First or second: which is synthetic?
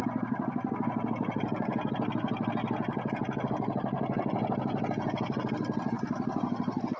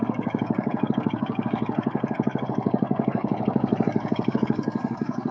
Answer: second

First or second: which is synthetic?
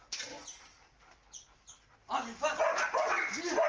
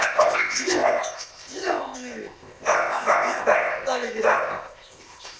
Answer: second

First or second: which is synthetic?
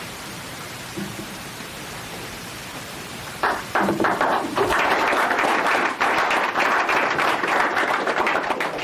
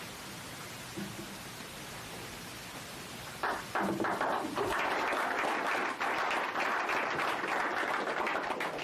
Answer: first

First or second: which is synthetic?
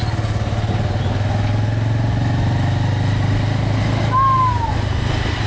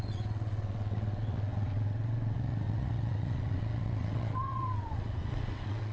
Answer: second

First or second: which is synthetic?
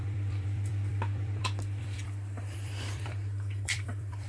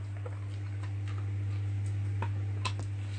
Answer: first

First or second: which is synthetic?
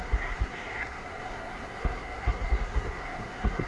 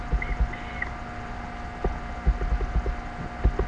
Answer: first